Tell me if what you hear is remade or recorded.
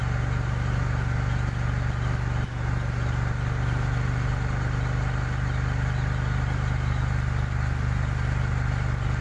recorded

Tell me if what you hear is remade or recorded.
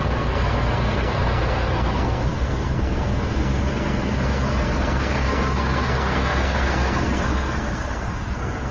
remade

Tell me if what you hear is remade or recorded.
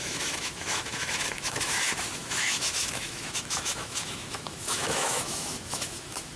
remade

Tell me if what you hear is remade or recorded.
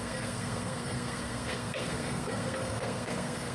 remade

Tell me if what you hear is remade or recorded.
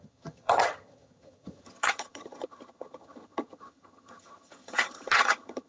remade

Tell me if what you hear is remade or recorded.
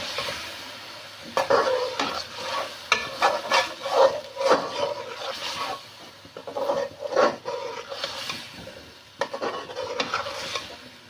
recorded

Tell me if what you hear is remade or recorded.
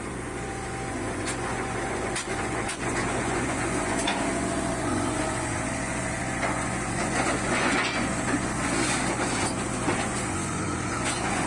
remade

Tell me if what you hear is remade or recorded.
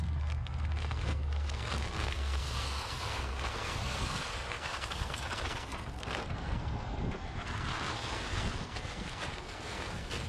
remade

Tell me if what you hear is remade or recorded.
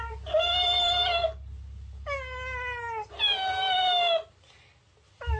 recorded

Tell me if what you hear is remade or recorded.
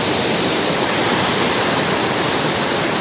recorded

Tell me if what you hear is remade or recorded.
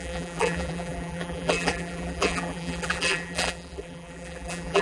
remade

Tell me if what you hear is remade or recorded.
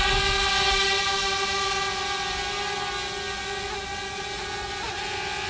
recorded